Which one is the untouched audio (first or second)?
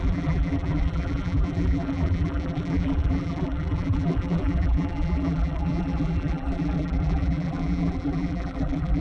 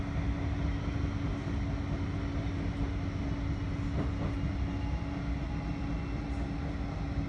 second